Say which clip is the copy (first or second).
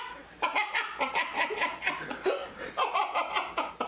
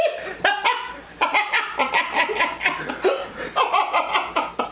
first